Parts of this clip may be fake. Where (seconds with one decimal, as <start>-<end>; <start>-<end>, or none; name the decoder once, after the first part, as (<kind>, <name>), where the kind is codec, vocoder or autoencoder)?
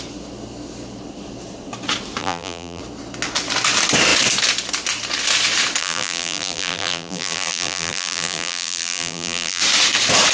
2.2-2.8 (vocoder, BigVGAN v2); 5.8-9.6